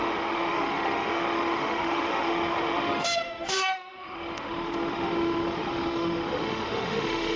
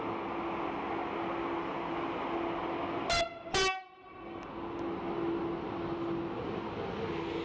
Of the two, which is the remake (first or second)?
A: first